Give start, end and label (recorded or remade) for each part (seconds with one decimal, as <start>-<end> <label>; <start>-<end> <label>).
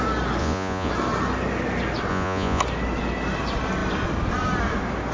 0.0-0.4 recorded; 0.4-0.9 remade; 0.9-2.1 recorded; 2.1-2.6 remade; 2.6-5.1 recorded